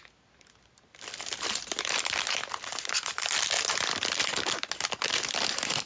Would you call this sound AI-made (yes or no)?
no